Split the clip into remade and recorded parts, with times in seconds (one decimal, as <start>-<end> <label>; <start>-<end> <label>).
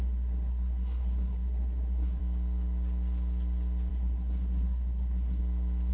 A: 0.0-2.2 remade; 2.2-3.9 recorded; 3.9-5.4 remade; 5.4-5.9 recorded